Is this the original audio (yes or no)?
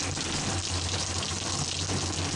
yes